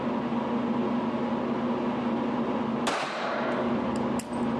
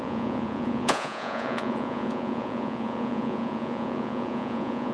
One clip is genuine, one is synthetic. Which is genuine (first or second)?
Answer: first